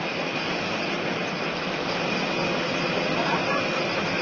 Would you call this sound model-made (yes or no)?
no